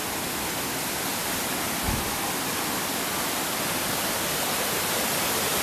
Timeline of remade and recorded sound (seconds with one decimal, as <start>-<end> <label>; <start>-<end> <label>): 0.0-5.6 recorded